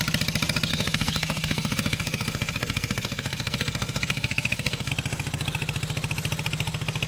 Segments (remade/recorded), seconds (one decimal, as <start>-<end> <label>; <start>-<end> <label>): 0.0-0.7 recorded; 0.7-4.9 remade; 4.9-7.1 recorded